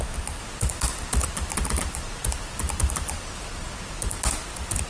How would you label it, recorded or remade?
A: recorded